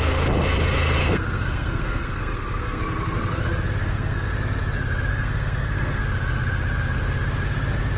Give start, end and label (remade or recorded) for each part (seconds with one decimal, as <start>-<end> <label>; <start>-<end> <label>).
0.0-1.0 recorded; 1.0-2.8 remade; 2.8-3.8 recorded; 3.8-4.3 remade; 4.3-5.1 recorded; 5.1-6.0 remade; 6.0-8.0 recorded